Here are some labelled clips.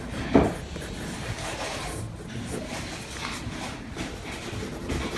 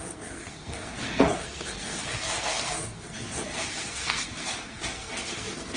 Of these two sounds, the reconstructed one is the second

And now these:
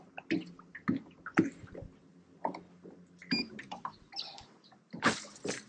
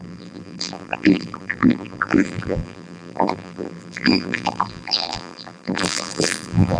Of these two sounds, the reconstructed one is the second